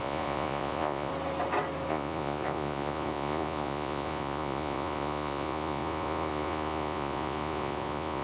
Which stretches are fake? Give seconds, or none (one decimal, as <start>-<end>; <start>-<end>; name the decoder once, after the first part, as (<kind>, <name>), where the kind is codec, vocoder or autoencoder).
0.0-1.1 (vocoder, Vocos); 1.9-8.2